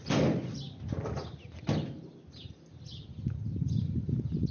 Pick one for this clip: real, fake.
real